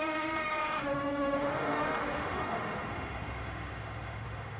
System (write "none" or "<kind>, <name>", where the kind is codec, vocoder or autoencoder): autoencoder, DAC-VAE